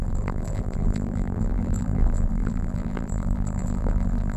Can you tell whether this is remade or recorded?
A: remade